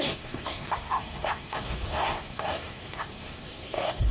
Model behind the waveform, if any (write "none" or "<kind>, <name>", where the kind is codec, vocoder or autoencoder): codec, SNAC